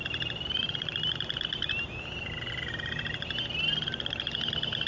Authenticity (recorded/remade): recorded